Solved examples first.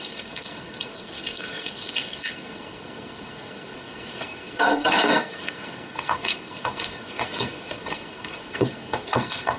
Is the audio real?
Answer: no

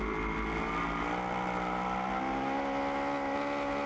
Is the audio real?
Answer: yes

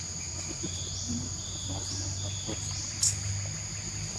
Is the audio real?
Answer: yes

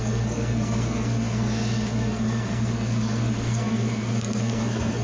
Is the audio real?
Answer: no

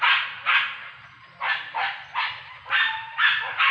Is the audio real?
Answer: yes